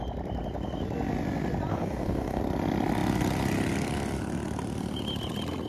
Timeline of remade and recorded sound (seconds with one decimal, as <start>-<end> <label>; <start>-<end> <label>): 0.0-1.7 recorded; 1.7-2.4 remade; 2.4-5.7 recorded